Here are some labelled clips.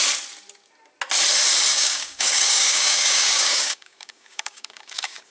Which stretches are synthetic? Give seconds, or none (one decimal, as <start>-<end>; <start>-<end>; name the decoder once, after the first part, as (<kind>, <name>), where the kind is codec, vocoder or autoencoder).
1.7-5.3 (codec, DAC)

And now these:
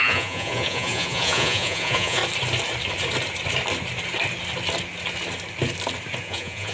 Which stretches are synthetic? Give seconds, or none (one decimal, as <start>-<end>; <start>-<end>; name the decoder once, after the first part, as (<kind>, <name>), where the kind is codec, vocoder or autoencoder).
0.0-2.2 (vocoder, Vocos); 6.2-6.7

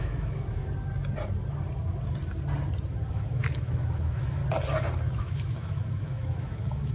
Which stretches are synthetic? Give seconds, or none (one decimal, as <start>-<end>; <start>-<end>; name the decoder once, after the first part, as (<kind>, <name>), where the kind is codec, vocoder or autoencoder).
0.0-0.6 (autoencoder, DAC-VAE); 3.1-4.4; 5.2-6.9

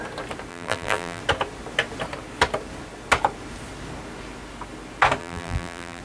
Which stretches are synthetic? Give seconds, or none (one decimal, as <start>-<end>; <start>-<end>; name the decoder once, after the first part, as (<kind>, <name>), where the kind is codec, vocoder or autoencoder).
0.5-1.2 (vocoder, BigVGAN v2); 5.2-6.0

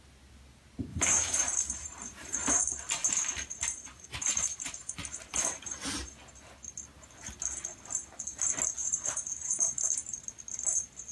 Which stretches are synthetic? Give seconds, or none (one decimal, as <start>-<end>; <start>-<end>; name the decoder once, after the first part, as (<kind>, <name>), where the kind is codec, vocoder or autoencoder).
0.9-2.6 (vocoder, BigVGAN v2); 3.0-6.1; 8.8-9.7